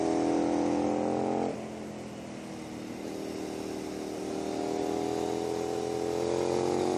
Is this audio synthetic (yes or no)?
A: no